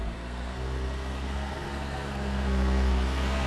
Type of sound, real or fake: fake